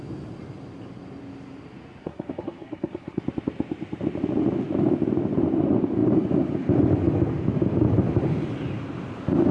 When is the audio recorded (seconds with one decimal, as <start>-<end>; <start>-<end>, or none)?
0.0-2.0; 3.2-9.5